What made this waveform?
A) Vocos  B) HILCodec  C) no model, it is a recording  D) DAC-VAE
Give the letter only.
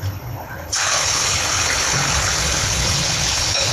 B